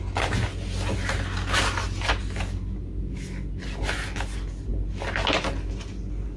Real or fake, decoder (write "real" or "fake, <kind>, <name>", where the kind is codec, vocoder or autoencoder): real